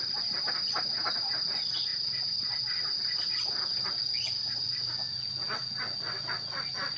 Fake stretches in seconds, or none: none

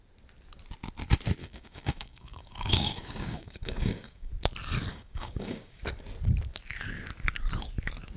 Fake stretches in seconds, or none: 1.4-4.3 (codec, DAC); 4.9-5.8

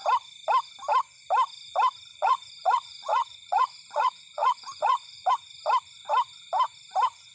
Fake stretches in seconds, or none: 2.1-5.3 (vocoder, Vocos)

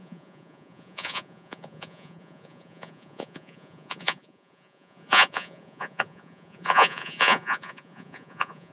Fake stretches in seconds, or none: 0.0-8.7 (vocoder, Vocos)

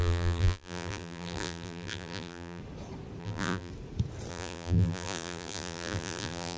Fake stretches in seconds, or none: 0.0-2.6 (vocoder, BigVGAN v2); 3.2-3.7; 4.3-6.6

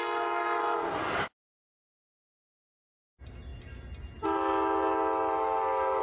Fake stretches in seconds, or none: none

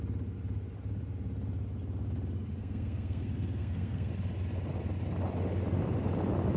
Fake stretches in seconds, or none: 2.6-4.1 (codec, SNAC)

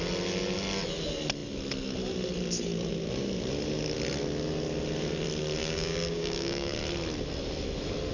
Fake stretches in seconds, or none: 5.6-6.8 (codec, DAC)